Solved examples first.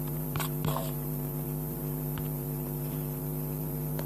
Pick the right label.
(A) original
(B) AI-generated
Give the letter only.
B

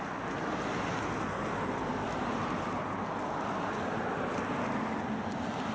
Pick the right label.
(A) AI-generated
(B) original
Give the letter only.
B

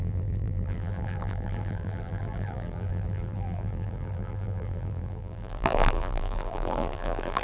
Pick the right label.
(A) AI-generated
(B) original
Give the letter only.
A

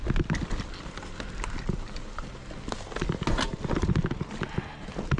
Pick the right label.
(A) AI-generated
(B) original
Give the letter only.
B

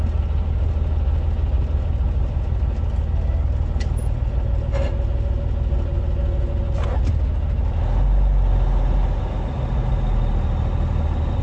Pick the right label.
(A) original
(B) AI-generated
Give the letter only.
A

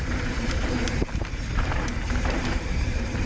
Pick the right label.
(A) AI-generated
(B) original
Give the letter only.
A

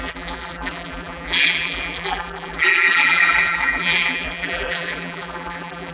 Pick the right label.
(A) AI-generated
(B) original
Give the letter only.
A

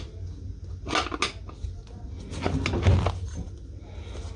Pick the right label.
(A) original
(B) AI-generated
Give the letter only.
A